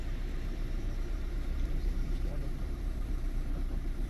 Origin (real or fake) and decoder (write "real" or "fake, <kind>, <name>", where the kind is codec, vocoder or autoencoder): fake, vocoder, BigVGAN v2